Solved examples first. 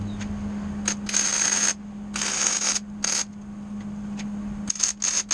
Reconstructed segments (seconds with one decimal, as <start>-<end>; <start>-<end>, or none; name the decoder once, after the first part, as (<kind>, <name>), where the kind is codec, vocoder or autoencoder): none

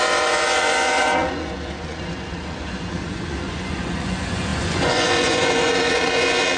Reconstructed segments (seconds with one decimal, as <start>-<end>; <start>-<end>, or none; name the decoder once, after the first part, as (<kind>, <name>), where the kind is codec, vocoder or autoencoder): 0.0-6.6 (vocoder, Vocos)

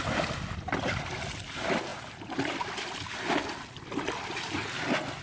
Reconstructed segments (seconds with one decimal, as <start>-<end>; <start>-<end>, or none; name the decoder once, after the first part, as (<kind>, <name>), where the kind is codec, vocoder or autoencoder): none